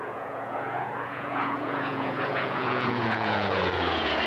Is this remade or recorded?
remade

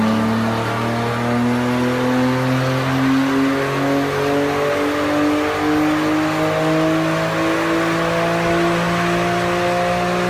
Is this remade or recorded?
recorded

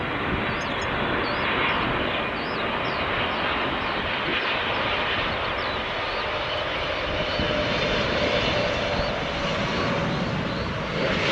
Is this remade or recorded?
recorded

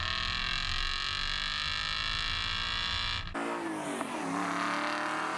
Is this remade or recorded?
recorded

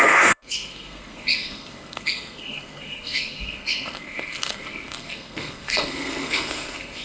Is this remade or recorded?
remade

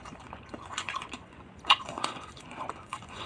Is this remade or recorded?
remade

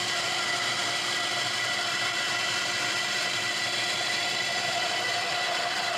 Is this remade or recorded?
recorded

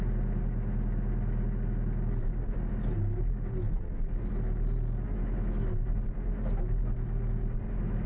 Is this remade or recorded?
recorded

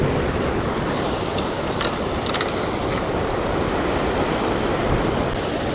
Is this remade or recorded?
recorded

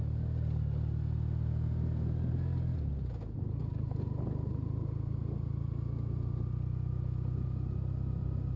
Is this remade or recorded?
recorded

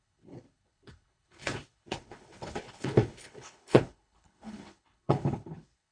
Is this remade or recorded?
remade